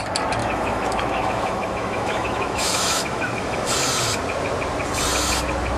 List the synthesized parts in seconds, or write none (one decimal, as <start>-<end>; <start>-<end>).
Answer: 0.4-3.7